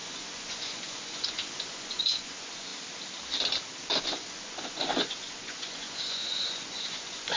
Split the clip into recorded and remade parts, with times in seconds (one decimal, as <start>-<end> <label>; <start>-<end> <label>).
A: 0.0-2.7 remade; 2.7-4.0 recorded; 4.0-7.4 remade